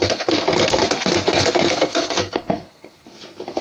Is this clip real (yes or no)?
no